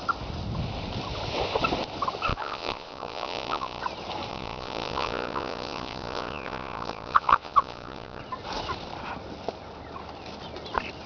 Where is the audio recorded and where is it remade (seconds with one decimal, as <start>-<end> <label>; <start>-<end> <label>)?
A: 0.0-2.3 recorded; 2.3-3.8 remade; 3.8-4.3 recorded; 4.3-8.2 remade; 8.2-11.1 recorded